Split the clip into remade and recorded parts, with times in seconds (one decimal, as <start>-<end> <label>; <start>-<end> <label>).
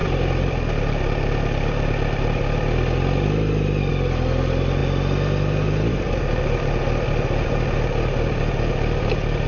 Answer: 0.0-9.5 recorded